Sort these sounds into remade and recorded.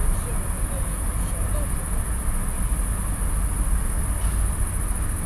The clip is recorded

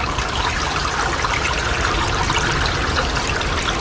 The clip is recorded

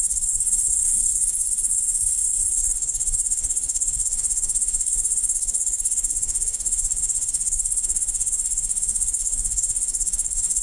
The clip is remade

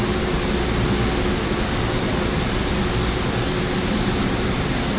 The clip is recorded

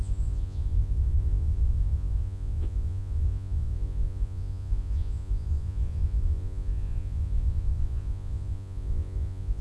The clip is remade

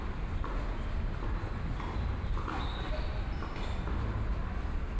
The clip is recorded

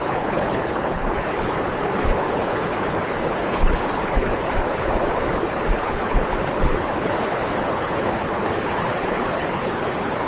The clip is remade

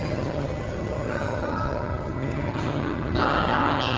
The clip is remade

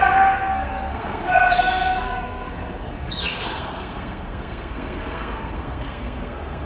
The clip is remade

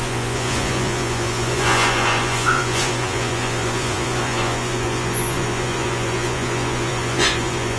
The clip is remade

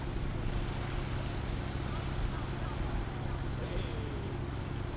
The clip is recorded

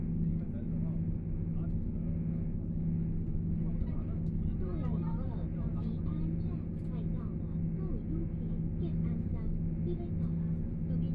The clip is recorded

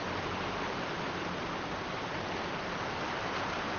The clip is recorded